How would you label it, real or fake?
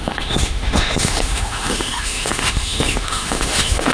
fake